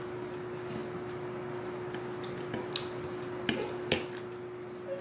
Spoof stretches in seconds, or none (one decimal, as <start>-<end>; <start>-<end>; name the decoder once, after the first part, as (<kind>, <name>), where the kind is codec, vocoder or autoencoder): none